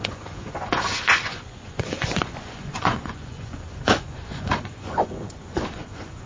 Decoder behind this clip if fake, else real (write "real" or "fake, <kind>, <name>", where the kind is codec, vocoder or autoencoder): fake, vocoder, Vocos